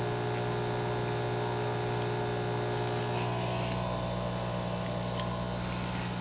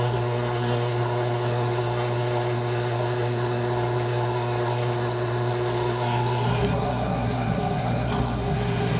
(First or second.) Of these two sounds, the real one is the first